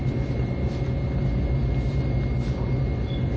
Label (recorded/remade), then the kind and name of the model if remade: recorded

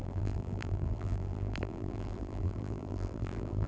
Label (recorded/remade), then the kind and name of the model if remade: remade, vocoder, BigVGAN v2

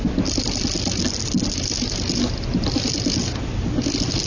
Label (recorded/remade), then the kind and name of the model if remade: recorded